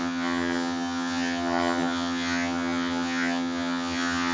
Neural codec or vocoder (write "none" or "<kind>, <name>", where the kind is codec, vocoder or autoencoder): vocoder, HiFi-GAN